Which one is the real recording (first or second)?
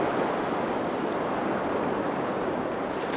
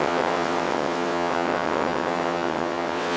first